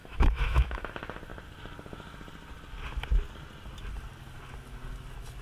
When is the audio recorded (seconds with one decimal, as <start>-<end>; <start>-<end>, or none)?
0.9-5.4

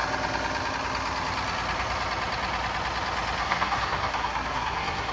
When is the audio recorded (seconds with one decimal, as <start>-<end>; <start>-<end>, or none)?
0.0-3.4